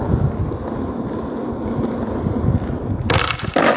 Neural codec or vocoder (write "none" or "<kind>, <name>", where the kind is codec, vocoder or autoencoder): none